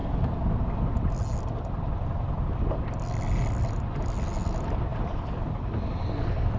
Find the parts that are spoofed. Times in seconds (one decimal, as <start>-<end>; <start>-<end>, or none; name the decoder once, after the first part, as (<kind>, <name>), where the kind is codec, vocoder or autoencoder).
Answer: none